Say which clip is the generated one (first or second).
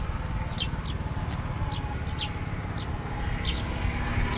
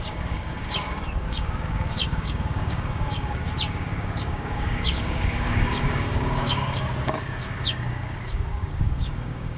second